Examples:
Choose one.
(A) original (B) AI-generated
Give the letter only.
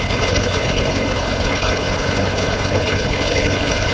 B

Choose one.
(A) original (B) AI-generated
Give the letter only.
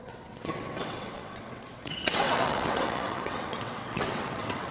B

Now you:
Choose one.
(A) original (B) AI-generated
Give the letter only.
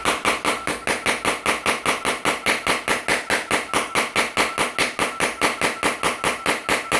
A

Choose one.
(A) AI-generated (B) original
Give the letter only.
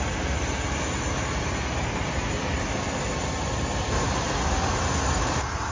B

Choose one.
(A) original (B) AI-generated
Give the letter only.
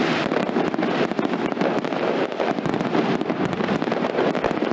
A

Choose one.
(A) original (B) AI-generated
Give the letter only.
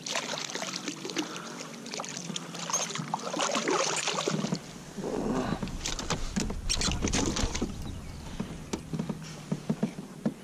A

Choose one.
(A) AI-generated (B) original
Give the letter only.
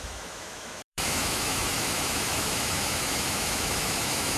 A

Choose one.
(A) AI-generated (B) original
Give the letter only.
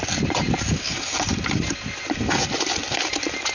B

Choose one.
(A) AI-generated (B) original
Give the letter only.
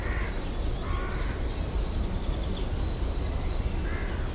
B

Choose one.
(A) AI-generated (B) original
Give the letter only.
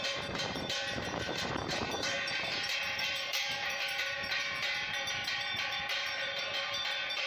A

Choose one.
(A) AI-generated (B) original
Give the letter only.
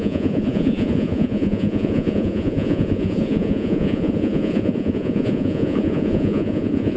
A